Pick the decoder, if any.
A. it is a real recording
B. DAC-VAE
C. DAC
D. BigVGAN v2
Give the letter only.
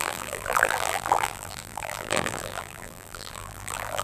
D